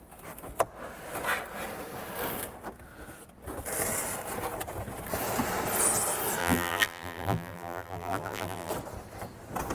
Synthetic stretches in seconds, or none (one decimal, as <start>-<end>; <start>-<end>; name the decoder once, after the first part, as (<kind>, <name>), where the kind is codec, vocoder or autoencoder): 6.4-8.7 (vocoder, BigVGAN v2)